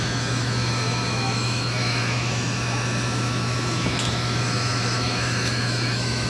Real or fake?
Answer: fake